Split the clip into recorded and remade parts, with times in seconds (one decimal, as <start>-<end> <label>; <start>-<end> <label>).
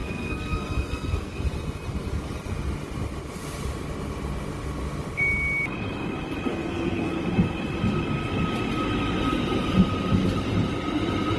0.0-1.4 remade; 1.4-6.5 recorded; 6.5-7.1 remade; 7.1-11.4 recorded